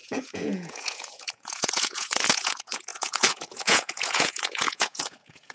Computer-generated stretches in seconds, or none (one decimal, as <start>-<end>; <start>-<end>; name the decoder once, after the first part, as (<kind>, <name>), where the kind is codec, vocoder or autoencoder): 0.0-5.5 (vocoder, Vocos)